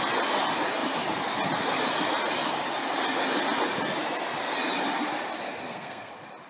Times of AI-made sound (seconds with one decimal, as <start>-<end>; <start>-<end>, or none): 5.6-6.1